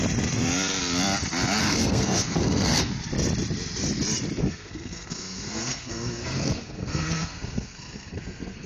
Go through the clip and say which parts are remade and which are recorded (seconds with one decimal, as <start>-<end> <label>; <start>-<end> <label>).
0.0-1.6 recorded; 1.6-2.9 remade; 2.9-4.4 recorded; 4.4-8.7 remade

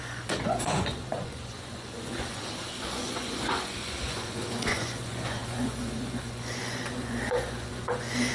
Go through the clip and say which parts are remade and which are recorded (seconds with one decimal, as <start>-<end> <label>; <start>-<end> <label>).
0.0-8.3 remade

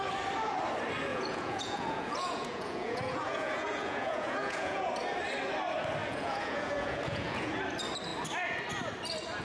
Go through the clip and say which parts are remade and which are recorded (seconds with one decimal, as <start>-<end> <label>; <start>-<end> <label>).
0.0-1.1 recorded; 1.1-4.9 remade; 4.9-6.0 recorded; 6.0-7.5 remade; 7.5-9.4 recorded

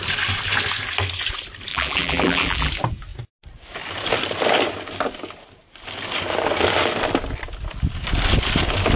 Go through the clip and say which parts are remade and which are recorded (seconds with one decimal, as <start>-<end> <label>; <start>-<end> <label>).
0.0-1.7 recorded; 1.7-2.7 remade; 2.7-9.0 recorded

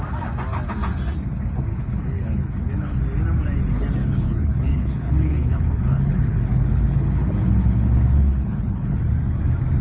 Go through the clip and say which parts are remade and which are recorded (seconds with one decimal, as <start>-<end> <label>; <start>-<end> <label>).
0.0-1.7 recorded; 1.7-3.0 remade; 3.0-4.0 recorded; 4.0-9.0 remade; 9.0-9.8 recorded

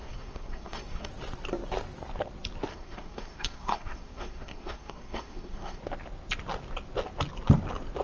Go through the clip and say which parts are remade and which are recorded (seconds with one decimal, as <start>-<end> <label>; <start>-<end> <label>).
0.0-1.1 remade; 1.1-2.7 recorded; 2.7-5.8 remade; 5.8-8.0 recorded

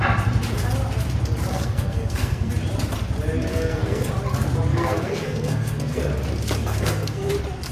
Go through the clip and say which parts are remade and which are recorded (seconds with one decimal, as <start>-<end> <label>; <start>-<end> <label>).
0.0-1.5 recorded; 1.5-2.5 remade; 2.5-3.5 recorded; 3.5-4.1 remade; 4.1-4.7 recorded; 4.7-6.0 remade; 6.0-6.6 recorded; 6.6-7.3 remade; 7.3-7.7 recorded

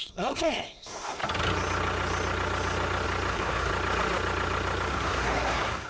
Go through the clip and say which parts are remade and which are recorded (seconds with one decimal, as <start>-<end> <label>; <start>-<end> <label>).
0.0-1.2 remade; 1.2-3.3 recorded; 3.3-3.7 remade; 3.7-4.9 recorded; 4.9-5.9 remade